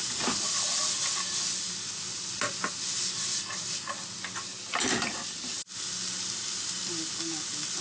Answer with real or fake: real